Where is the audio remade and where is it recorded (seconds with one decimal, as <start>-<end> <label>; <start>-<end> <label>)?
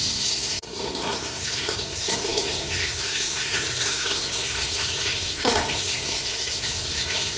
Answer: 0.0-7.4 remade